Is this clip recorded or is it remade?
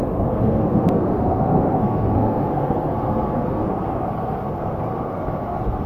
remade